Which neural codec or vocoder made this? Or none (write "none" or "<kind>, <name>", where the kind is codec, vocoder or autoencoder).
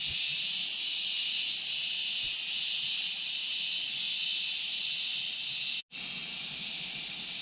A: none